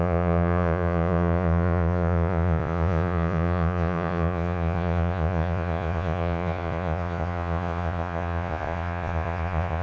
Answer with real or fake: fake